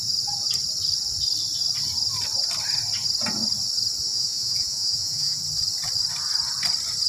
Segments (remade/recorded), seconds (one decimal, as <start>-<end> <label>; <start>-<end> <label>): 0.0-4.1 recorded; 4.1-5.4 remade; 5.4-7.1 recorded